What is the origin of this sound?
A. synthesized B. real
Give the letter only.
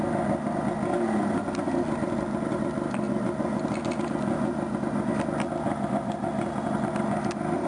B